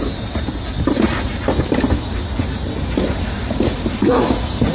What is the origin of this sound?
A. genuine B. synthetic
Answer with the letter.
A